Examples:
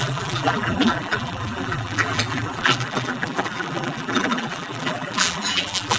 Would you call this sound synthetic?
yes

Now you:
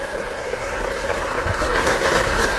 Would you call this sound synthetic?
yes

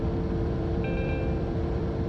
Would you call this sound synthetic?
yes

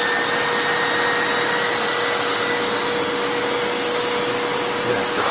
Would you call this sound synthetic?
no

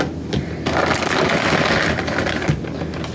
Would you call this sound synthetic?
no